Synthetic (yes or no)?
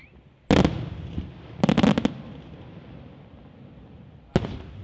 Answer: no